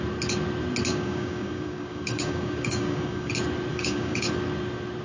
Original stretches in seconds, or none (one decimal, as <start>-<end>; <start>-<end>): 0.0-0.9; 3.3-3.7; 4.3-5.0